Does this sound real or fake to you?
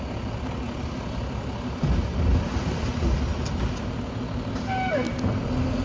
real